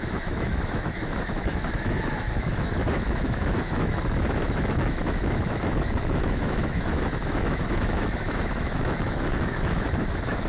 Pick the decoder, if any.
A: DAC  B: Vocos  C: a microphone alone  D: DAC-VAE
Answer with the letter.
D